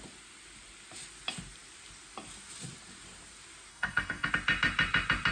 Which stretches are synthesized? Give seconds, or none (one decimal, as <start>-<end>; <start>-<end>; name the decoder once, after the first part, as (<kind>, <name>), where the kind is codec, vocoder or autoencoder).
3.7-4.3 (codec, SNAC)